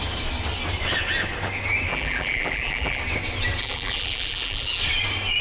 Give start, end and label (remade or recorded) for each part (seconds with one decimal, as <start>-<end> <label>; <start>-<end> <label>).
0.0-1.9 recorded; 1.9-3.0 remade; 3.0-3.6 recorded; 3.6-4.8 remade; 4.8-5.4 recorded